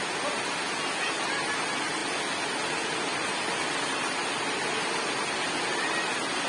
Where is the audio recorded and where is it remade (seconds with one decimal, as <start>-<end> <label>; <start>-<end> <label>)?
0.0-6.5 recorded